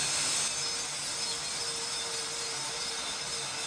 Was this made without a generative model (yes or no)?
yes